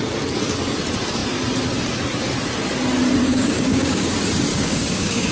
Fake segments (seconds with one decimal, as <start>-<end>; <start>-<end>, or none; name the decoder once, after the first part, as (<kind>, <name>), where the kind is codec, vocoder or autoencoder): 3.2-4.1 (codec, DAC); 4.5-5.3